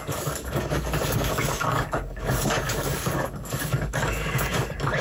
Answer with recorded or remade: remade